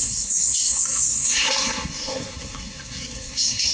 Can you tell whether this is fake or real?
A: fake